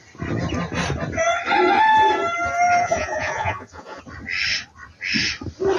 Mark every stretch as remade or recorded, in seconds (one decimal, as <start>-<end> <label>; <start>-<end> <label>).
0.0-2.8 recorded; 2.8-4.0 remade; 4.0-5.8 recorded